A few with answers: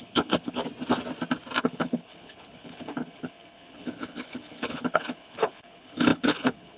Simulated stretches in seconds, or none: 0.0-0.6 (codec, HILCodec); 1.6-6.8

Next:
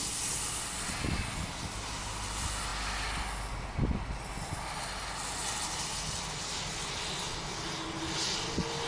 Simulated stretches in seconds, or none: none

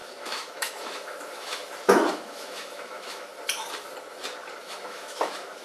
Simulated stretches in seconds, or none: 0.0-1.6 (autoencoder, DAC-VAE); 2.1-3.3; 4.6-5.6

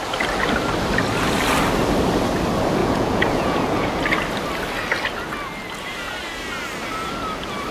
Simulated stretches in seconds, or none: 2.8-4.0 (vocoder, Vocos)

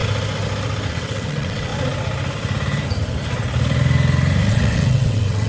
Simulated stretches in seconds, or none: 0.9-1.7 (vocoder, WaveNeXt); 4.5-5.5